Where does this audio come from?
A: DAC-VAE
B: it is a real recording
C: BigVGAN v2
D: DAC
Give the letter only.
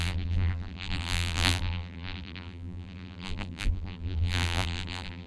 C